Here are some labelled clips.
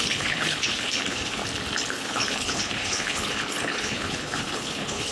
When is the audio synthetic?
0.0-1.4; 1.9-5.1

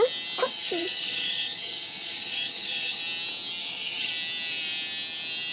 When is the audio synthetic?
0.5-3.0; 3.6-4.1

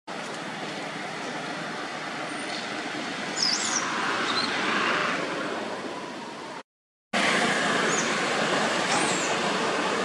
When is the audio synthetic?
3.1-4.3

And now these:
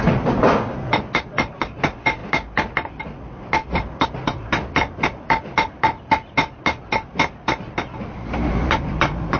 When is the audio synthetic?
none

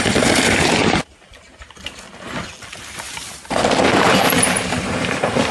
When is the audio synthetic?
0.0-0.8; 2.7-5.5